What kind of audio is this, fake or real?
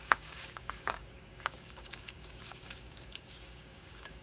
fake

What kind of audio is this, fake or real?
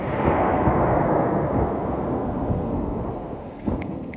fake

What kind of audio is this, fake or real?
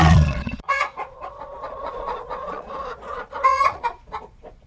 fake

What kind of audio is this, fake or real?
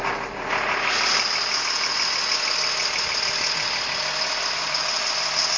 real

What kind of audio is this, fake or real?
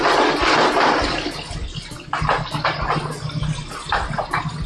real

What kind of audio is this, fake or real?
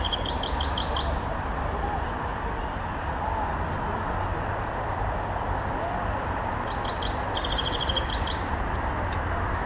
real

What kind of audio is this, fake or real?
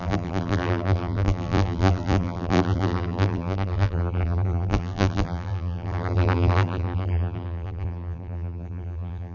fake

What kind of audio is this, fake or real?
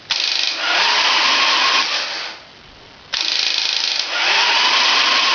real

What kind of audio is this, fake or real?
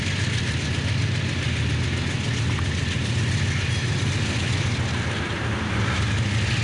real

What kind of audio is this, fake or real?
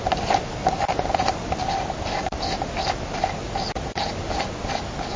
real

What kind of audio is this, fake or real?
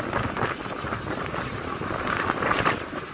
real